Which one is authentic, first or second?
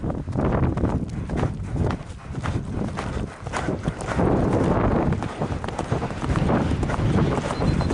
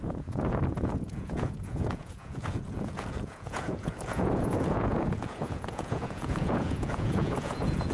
first